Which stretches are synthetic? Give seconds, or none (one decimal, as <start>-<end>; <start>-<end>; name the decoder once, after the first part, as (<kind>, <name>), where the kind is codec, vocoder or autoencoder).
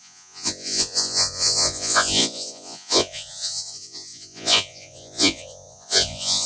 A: 0.0-6.5 (vocoder, Vocos)